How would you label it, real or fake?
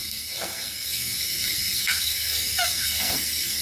fake